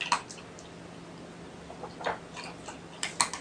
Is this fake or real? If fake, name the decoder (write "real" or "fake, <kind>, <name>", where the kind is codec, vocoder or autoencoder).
real